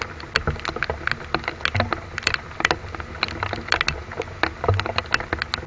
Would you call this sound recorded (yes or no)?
yes